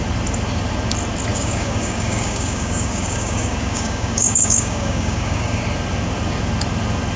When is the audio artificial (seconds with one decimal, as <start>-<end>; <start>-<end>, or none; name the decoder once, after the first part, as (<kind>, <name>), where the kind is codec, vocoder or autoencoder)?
1.3-5.6 (codec, DAC)